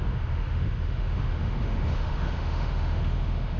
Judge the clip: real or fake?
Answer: fake